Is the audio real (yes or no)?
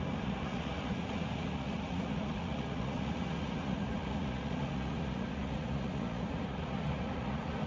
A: no